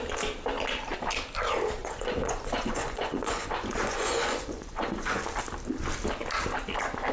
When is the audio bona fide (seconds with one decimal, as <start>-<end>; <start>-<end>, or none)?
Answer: 0.0-1.8; 5.2-7.1